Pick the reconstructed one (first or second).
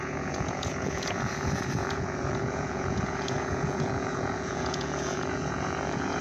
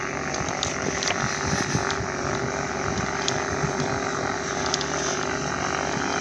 first